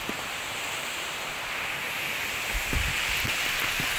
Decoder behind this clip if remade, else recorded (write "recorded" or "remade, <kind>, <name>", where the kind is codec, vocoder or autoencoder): recorded